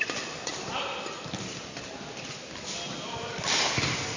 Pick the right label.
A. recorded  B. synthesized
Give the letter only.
A